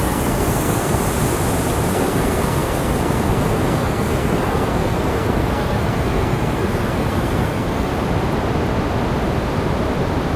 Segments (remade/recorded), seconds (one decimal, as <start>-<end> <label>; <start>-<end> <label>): 0.0-1.0 remade; 1.0-1.9 recorded; 1.9-7.9 remade; 7.9-10.4 recorded